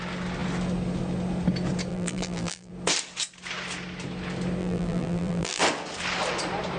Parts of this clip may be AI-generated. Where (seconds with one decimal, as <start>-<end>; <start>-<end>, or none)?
1.9-2.7; 4.6-5.6